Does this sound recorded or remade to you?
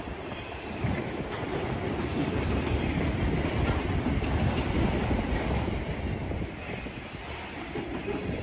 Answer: remade